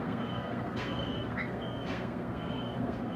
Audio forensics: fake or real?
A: fake